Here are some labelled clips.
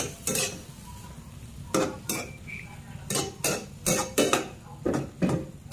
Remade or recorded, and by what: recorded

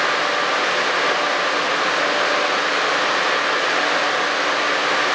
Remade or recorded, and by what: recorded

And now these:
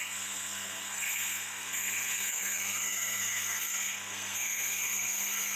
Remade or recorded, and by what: remade, codec, SNAC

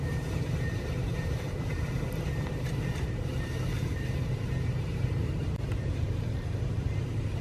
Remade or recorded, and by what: remade, vocoder, BigVGAN v2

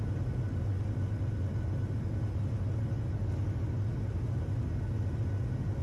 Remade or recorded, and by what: recorded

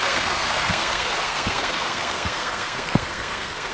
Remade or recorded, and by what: remade, codec, SNAC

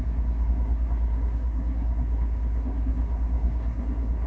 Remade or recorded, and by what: remade, codec, SNAC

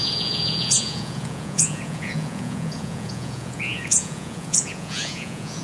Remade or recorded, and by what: remade, vocoder, Vocos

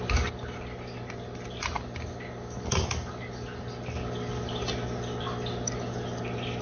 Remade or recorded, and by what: recorded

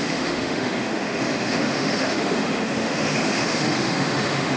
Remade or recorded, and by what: remade, autoencoder, DAC-VAE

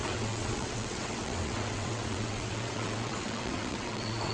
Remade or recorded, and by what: remade, vocoder, WaveNeXt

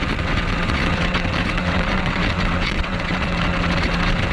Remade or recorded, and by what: remade, vocoder, WaveNeXt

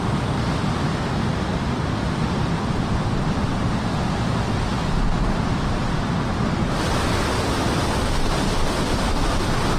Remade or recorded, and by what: recorded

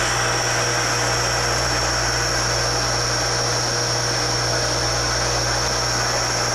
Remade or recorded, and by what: recorded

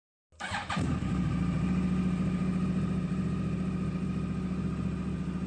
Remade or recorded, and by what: recorded